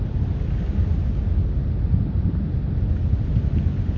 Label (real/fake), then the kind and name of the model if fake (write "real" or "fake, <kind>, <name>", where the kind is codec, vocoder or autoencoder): real